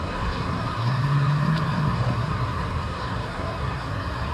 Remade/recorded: remade